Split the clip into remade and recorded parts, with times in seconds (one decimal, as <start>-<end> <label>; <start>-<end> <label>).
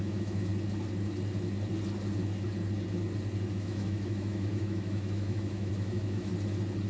0.0-0.5 remade; 0.5-3.5 recorded; 3.5-6.3 remade; 6.3-6.9 recorded